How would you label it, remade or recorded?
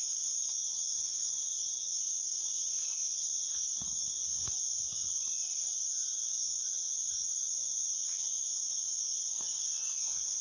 remade